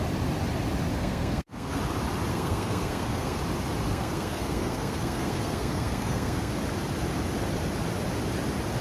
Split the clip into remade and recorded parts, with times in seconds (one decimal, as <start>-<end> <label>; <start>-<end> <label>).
0.0-0.9 recorded; 0.9-1.8 remade; 1.8-2.3 recorded; 2.3-3.4 remade; 3.4-3.9 recorded; 3.9-6.5 remade; 6.5-8.8 recorded